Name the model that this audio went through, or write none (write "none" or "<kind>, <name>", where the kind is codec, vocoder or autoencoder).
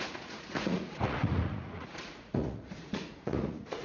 vocoder, Vocos